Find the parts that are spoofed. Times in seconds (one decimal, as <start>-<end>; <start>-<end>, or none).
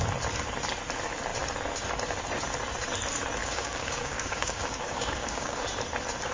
3.4-5.6